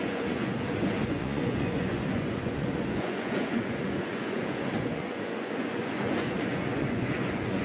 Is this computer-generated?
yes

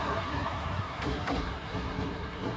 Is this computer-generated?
yes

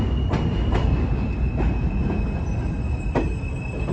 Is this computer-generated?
no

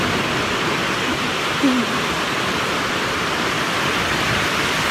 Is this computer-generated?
yes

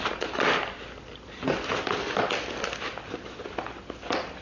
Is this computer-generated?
no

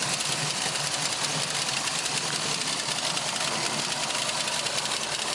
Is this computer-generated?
yes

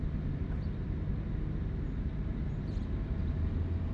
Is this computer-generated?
no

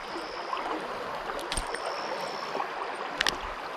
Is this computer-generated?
no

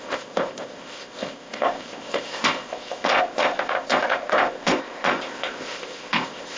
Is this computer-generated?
yes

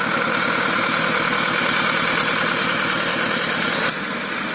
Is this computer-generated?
no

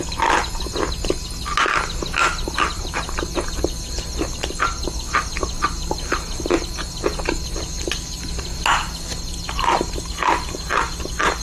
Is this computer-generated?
no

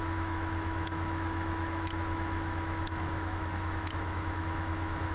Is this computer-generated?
yes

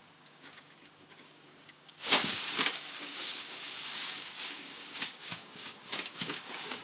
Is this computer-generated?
yes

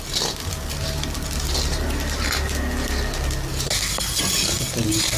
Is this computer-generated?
no